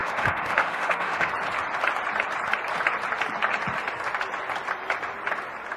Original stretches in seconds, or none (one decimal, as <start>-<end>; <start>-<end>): 1.3-5.8